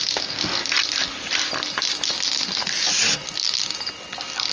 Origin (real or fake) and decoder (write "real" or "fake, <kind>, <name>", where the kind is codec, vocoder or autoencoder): real